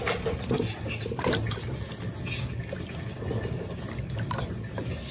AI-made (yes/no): no